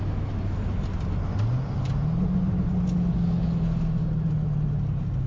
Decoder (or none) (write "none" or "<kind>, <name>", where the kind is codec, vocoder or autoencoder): none